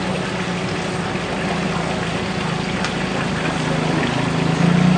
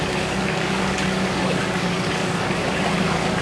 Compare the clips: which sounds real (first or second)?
first